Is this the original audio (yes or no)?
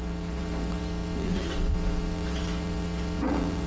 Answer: no